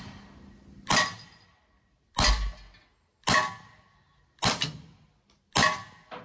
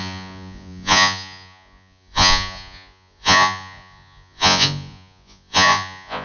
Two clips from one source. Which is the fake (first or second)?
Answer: second